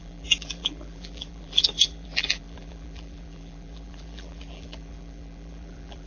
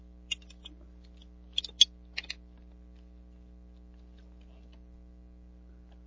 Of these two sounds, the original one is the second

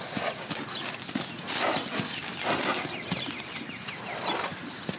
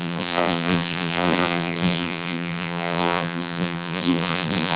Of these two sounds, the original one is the first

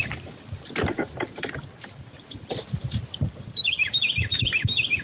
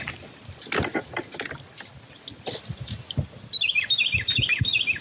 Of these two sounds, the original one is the second